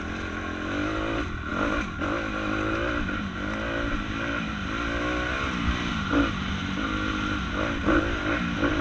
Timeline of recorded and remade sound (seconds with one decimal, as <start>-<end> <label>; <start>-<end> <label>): 0.0-8.8 recorded